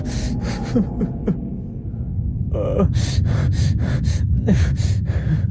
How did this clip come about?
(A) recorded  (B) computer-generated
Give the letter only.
A